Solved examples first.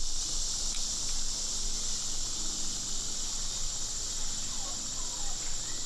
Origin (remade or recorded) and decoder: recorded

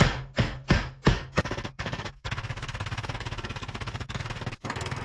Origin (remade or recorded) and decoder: remade, codec, SNAC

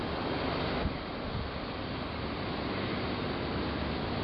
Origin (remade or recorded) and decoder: recorded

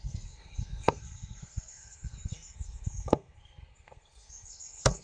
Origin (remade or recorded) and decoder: remade, codec, SNAC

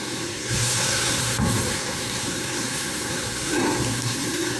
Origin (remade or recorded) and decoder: remade, codec, SNAC